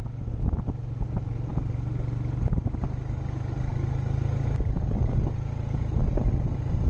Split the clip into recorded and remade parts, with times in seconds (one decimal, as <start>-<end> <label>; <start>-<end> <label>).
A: 0.0-6.9 recorded